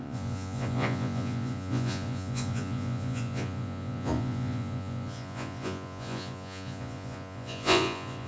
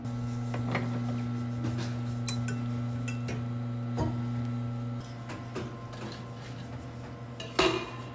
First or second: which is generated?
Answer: first